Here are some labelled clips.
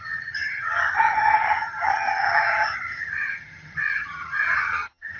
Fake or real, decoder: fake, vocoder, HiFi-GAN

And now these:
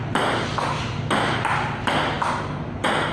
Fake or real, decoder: real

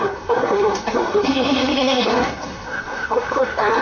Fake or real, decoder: fake, codec, SNAC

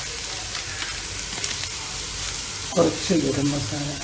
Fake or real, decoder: real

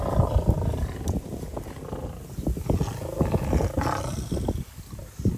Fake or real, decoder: real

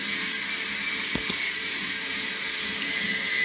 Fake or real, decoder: real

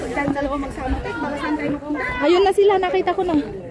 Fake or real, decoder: real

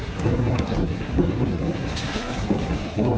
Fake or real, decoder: fake, codec, SNAC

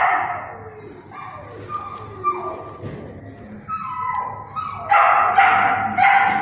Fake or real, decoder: real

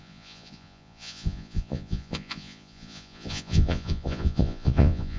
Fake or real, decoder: fake, vocoder, Vocos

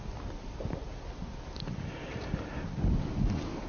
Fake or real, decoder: real